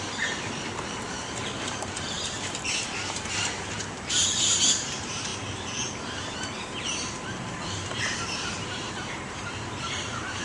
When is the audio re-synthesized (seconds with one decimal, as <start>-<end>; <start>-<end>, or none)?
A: 0.0-5.3; 7.5-10.4